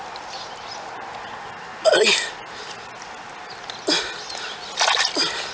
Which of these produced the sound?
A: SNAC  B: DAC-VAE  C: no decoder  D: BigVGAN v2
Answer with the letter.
C